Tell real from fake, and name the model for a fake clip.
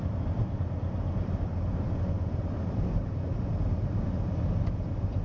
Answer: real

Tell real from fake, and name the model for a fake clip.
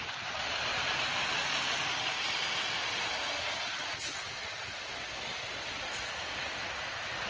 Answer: fake, vocoder, BigVGAN v2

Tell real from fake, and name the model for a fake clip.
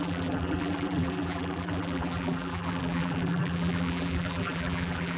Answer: fake, vocoder, BigVGAN v2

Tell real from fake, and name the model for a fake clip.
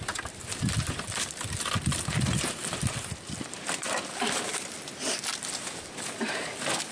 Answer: real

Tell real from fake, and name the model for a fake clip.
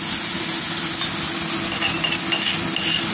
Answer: real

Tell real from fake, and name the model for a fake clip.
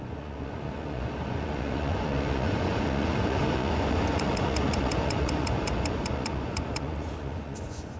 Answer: fake, vocoder, Vocos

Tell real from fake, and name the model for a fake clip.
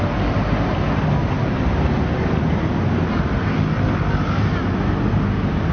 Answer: real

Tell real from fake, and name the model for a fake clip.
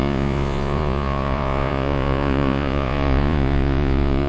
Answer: fake, vocoder, Vocos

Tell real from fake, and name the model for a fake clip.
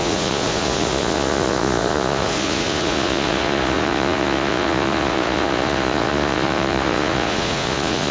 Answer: fake, vocoder, Vocos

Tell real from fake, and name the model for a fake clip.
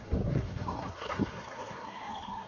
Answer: fake, codec, SNAC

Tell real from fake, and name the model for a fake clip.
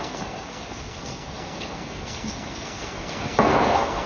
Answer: fake, codec, SNAC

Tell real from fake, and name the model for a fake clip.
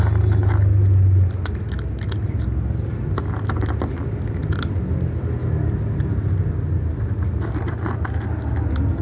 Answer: real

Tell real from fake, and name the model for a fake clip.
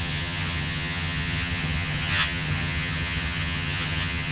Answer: fake, vocoder, HiFi-GAN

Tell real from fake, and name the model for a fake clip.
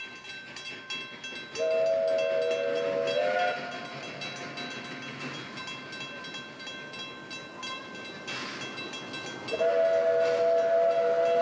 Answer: real